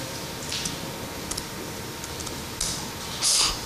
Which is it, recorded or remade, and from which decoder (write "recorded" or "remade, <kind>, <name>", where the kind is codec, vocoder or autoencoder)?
recorded